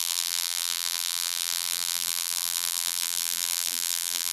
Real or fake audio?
fake